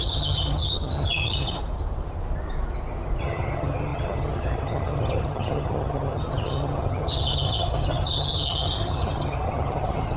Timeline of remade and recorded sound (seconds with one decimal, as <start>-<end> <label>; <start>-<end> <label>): 0.0-1.6 remade; 1.6-3.2 recorded; 3.2-10.2 remade